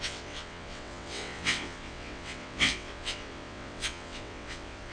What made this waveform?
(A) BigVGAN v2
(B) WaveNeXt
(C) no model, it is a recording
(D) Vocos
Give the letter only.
B